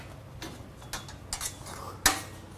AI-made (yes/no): no